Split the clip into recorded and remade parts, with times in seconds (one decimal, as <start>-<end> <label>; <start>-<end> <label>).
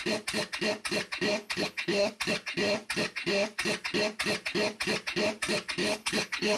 0.0-1.4 recorded; 1.4-2.1 remade; 2.1-5.8 recorded; 5.8-6.6 remade